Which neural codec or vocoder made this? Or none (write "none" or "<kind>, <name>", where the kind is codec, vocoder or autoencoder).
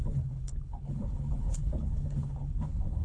codec, HILCodec